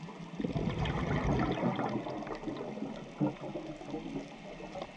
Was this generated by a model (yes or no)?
no